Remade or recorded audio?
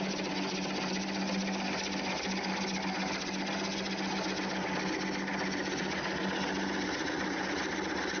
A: recorded